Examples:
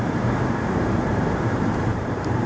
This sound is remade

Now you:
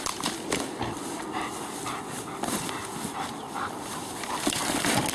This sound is recorded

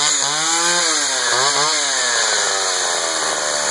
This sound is recorded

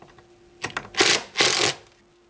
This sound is recorded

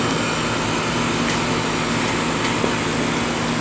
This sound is recorded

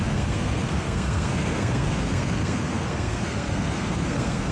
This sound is remade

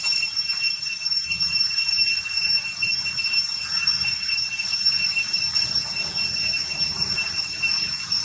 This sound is remade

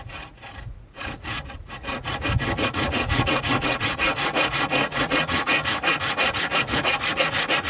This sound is remade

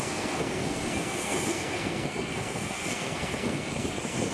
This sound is remade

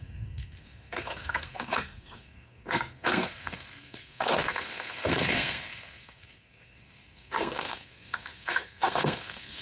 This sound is remade